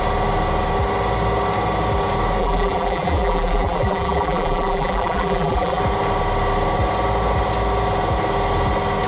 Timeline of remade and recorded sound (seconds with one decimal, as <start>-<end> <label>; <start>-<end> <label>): 0.0-2.4 recorded; 2.4-5.8 remade; 5.8-9.1 recorded